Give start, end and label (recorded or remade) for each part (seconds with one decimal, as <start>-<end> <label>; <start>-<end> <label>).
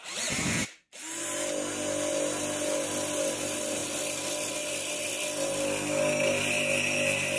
0.0-7.4 recorded